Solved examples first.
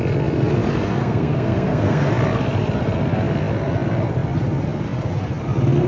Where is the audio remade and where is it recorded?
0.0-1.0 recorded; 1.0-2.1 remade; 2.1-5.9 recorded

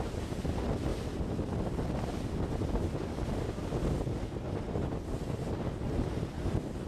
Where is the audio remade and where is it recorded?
0.0-6.9 recorded